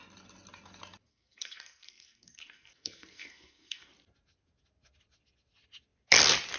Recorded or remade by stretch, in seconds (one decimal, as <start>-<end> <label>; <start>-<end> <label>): 0.0-1.1 recorded; 1.1-3.9 remade; 3.9-6.6 recorded